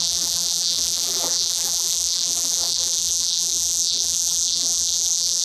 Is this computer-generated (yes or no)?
yes